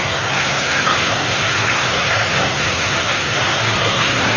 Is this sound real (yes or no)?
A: no